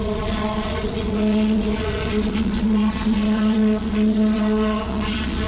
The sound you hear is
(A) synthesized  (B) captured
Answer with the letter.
A